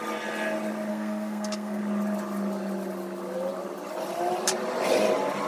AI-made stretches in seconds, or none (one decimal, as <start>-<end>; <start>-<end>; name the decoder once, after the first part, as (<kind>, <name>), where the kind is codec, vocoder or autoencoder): 0.9-1.8 (codec, SNAC)